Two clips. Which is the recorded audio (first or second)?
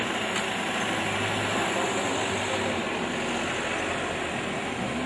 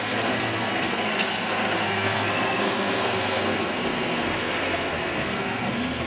first